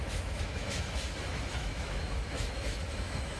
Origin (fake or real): fake